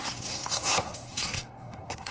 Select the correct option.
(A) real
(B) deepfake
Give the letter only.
B